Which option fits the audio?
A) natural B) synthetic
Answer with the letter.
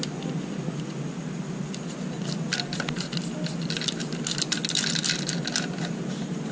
A